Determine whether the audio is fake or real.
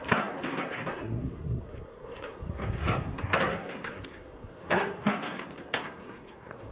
fake